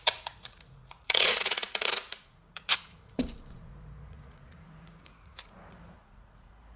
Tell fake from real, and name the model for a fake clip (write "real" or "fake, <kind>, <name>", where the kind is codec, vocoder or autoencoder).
fake, vocoder, Vocos